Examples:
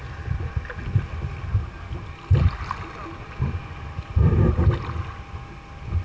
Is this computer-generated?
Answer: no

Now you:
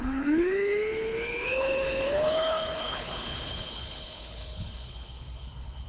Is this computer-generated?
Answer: yes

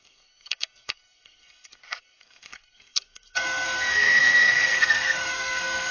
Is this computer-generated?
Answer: yes